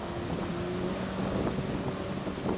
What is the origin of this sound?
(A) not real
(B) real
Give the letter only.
B